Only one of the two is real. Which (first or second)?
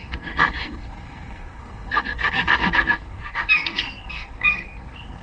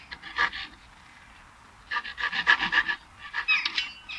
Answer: second